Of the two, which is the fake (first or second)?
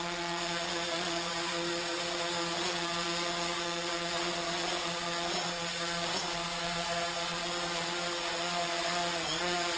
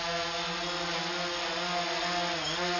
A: first